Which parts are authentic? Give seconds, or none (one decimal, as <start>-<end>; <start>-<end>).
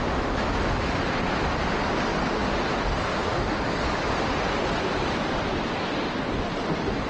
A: 0.0-7.1